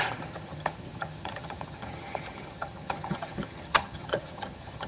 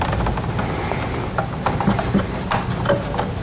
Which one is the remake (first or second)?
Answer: first